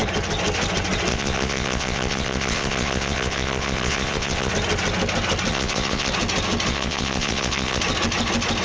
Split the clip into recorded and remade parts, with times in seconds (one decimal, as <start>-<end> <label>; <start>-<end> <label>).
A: 0.0-1.1 recorded; 1.1-4.5 remade; 4.5-5.5 recorded; 5.5-6.1 remade; 6.1-6.7 recorded; 6.7-7.8 remade; 7.8-8.6 recorded